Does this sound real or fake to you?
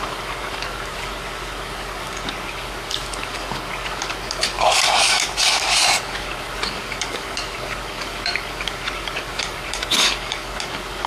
fake